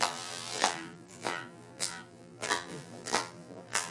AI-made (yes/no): yes